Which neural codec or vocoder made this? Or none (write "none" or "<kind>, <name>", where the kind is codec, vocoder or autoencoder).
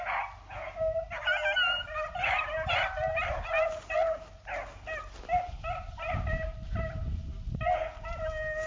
none